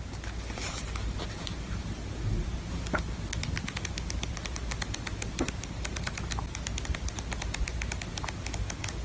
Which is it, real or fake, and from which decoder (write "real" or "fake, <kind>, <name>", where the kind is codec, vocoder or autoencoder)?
real